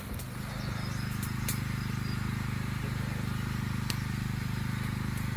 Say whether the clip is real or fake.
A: fake